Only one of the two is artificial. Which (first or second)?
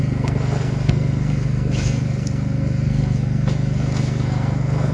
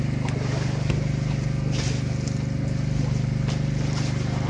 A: first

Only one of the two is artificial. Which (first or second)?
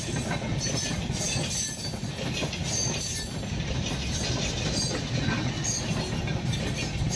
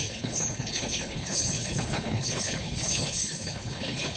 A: second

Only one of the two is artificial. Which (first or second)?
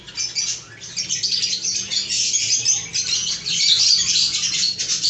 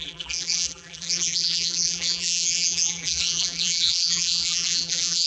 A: second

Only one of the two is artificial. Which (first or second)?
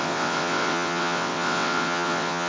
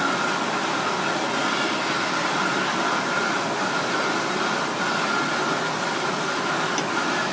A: first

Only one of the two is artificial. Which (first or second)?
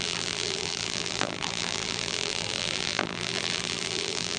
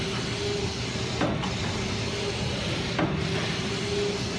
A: first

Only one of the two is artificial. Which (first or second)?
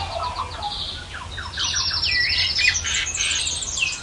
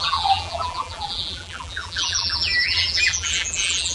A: second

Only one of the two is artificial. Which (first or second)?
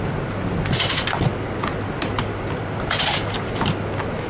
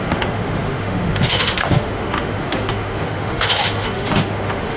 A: second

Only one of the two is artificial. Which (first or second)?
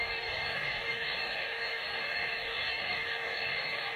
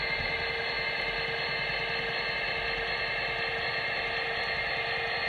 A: first